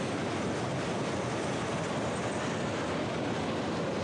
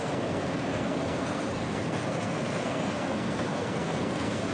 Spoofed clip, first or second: second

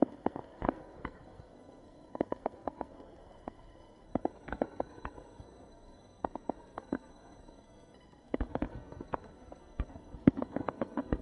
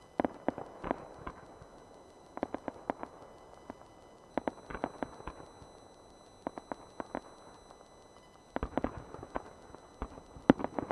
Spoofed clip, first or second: first